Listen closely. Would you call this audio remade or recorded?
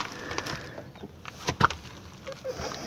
recorded